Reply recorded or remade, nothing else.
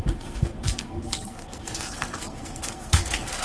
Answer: remade